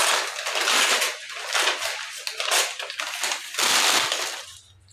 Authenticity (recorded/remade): recorded